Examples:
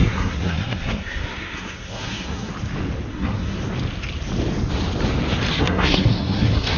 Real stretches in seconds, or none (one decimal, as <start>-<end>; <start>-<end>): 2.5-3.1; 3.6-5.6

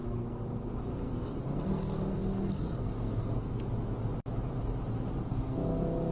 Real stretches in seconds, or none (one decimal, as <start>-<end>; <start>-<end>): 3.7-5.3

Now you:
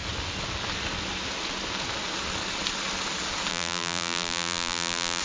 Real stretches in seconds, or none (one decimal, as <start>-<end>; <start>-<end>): 0.0-3.5

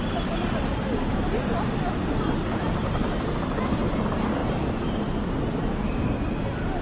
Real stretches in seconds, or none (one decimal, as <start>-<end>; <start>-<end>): 0.0-6.8

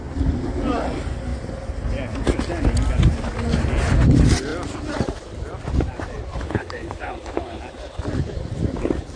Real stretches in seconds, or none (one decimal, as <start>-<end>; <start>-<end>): 0.0-6.3; 7.6-9.2

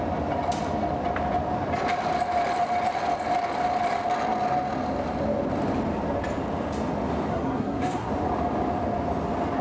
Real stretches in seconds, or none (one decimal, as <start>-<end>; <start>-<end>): 0.0-7.3; 8.1-9.6